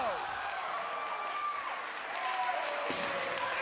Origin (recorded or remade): recorded